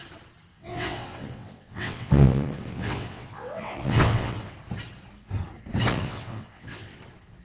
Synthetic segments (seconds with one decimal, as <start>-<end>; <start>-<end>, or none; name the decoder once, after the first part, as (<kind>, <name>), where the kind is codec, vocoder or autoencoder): 0.5-4.5 (vocoder, WaveNeXt); 5.9-7.0